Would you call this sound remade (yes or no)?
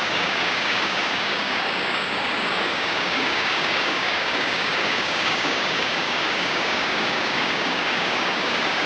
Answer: yes